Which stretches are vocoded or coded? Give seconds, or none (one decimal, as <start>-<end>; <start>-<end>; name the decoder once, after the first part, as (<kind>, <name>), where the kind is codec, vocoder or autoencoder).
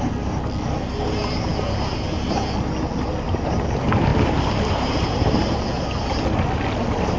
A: 4.1-5.6 (vocoder, BigVGAN v2)